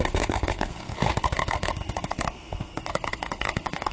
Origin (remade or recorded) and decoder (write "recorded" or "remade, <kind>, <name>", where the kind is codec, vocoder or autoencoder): remade, codec, SNAC